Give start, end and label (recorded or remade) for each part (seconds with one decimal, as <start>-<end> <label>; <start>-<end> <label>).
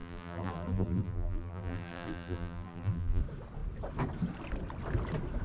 0.0-3.2 remade; 3.2-5.4 recorded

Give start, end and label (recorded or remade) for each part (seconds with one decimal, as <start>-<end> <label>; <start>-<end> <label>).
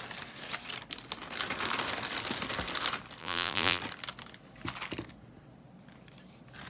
0.0-3.2 recorded; 3.2-3.8 remade; 3.8-6.7 recorded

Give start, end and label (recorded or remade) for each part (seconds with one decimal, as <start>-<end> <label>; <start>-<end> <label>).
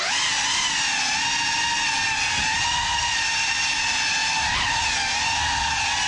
0.0-6.1 recorded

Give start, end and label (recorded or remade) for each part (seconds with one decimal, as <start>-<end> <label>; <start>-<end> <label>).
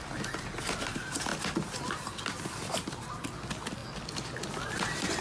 0.0-5.2 recorded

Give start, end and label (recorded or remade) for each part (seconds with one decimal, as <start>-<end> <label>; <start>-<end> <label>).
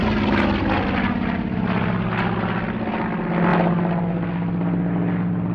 0.0-5.5 recorded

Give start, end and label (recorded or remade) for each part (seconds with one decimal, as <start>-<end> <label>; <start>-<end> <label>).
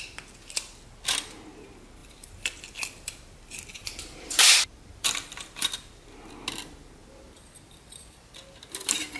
0.0-2.0 recorded; 2.0-6.3 remade; 6.3-7.0 recorded; 7.0-9.2 remade